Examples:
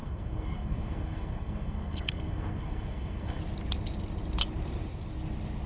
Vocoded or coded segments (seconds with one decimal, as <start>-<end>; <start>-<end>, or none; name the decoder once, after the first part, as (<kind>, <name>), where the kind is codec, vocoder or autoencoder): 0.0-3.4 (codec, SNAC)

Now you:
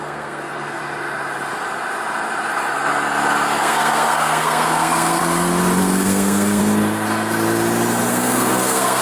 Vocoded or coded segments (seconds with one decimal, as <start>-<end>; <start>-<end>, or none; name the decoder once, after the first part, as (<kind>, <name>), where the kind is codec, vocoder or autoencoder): 0.0-0.8 (codec, SNAC); 3.6-5.2; 5.8-6.6; 8.1-9.0

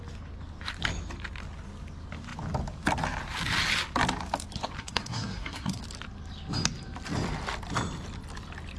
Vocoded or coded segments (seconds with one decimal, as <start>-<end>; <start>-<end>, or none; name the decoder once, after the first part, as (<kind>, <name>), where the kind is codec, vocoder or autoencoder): 4.8-5.8 (codec, SNAC)